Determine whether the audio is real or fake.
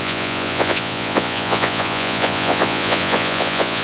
fake